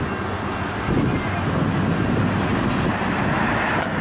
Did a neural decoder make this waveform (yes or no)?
no